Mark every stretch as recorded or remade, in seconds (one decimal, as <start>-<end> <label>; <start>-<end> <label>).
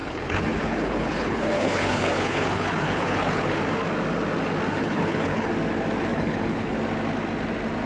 0.0-3.6 remade; 3.6-4.8 recorded; 4.8-5.5 remade; 5.5-6.1 recorded; 6.1-6.7 remade; 6.7-7.9 recorded